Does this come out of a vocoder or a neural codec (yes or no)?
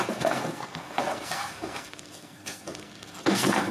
yes